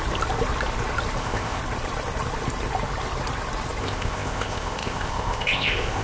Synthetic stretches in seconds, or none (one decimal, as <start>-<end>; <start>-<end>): 1.2-1.6; 3.8-6.0